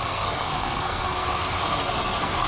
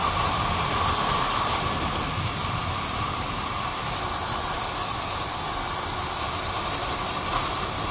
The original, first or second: second